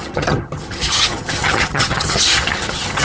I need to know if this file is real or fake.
fake